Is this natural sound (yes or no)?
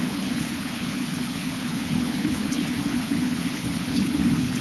no